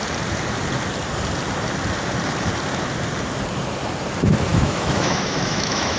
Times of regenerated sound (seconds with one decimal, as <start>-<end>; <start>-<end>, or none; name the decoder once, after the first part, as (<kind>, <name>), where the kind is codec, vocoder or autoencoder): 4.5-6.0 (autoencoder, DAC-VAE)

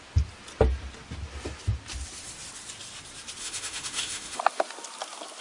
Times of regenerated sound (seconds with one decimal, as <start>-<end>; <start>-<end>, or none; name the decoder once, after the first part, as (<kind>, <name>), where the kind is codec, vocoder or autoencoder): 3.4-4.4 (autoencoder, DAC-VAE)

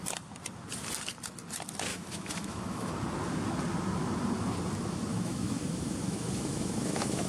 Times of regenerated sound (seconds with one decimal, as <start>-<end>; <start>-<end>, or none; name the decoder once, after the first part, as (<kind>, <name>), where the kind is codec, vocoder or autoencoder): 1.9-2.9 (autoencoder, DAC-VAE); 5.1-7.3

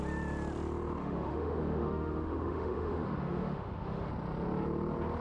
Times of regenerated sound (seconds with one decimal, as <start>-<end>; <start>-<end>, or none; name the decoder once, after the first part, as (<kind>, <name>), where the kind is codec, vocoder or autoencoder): 1.0-4.1 (autoencoder, DAC-VAE)